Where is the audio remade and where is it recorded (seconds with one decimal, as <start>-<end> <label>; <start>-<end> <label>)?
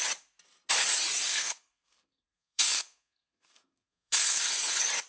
0.0-1.3 recorded; 1.3-4.4 remade; 4.4-5.1 recorded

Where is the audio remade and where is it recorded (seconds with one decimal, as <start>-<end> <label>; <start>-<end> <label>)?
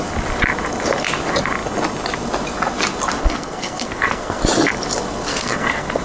0.0-3.2 recorded; 3.2-4.4 remade; 4.4-5.3 recorded; 5.3-6.0 remade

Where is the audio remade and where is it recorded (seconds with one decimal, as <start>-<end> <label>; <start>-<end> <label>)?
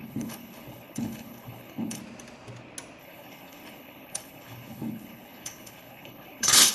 0.0-2.0 remade; 2.0-3.0 recorded; 3.0-6.7 remade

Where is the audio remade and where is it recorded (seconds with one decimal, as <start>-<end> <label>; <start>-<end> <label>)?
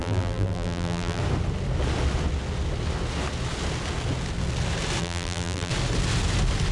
0.0-1.2 remade; 1.2-5.0 recorded; 5.0-5.7 remade; 5.7-6.7 recorded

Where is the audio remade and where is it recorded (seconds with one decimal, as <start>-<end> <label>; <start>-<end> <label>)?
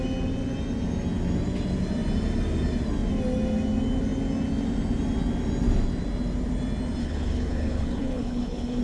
0.0-7.0 recorded; 7.0-8.8 remade